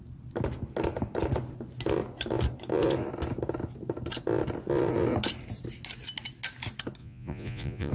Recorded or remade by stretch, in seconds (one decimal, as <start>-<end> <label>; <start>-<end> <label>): 0.0-7.0 recorded; 7.0-7.9 remade